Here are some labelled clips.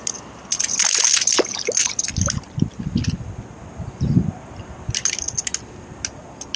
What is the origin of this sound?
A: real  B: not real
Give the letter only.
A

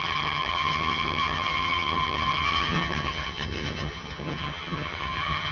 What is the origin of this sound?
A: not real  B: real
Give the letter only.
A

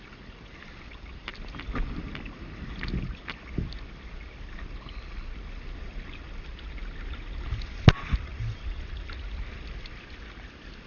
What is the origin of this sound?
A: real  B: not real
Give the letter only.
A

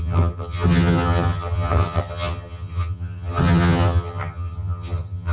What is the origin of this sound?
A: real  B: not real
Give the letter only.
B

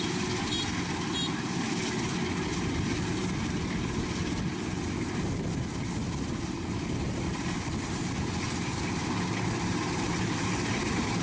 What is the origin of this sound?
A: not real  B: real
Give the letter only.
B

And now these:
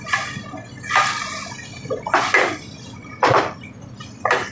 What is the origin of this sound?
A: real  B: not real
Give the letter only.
A